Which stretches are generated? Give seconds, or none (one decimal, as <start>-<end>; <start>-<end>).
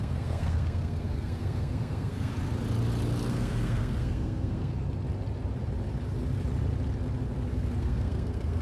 0.0-2.3; 3.3-4.7; 7.8-8.6